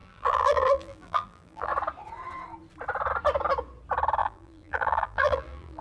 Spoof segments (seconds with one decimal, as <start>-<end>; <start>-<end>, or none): 0.0-1.7; 4.2-5.8